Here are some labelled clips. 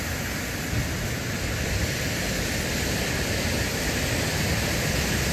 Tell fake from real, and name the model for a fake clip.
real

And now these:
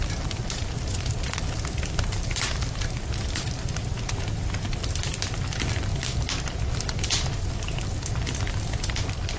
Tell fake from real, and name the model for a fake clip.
real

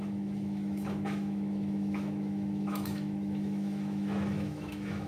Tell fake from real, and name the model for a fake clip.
fake, autoencoder, DAC-VAE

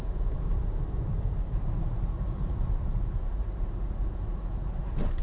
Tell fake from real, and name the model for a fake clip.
fake, vocoder, BigVGAN v2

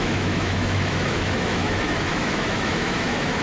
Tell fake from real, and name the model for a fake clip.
fake, autoencoder, DAC-VAE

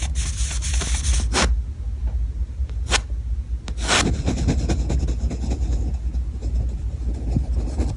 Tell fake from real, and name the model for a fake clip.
real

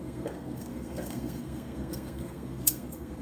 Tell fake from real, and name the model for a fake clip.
fake, codec, SNAC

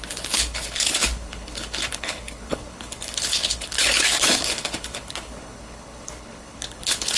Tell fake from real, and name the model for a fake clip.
fake, codec, HILCodec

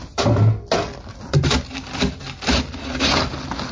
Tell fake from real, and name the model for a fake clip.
real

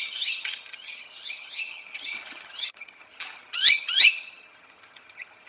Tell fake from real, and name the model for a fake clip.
fake, vocoder, HiFi-GAN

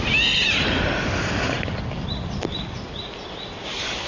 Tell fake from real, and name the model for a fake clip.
real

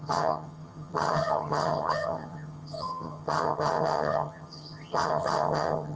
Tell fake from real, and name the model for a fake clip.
fake, vocoder, HiFi-GAN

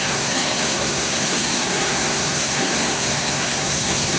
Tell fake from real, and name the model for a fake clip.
fake, codec, SNAC